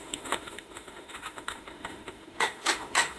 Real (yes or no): no